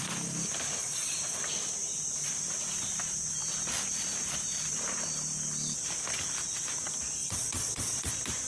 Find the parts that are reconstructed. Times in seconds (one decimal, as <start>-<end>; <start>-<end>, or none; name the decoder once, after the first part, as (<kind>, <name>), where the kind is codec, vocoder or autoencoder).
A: 0.8-1.4 (vocoder, Vocos); 7.2-8.1